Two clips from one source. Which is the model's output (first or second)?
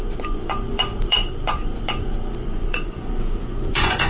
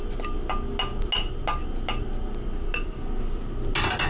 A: first